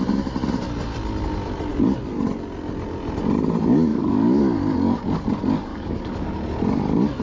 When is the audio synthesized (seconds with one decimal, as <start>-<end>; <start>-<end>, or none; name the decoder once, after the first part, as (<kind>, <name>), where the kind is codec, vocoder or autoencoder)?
3.9-4.4 (codec, DAC); 5.7-6.3